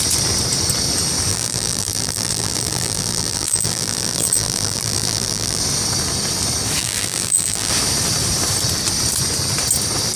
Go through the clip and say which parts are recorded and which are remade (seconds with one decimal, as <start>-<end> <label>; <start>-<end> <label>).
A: 0.0-1.3 recorded; 1.3-5.6 remade; 5.6-6.8 recorded; 6.8-7.7 remade; 7.7-10.2 recorded